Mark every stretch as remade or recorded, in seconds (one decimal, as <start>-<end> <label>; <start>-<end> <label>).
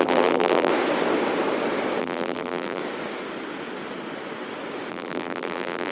0.0-0.7 remade; 0.7-2.0 recorded; 2.0-2.8 remade; 2.8-4.9 recorded; 4.9-5.9 remade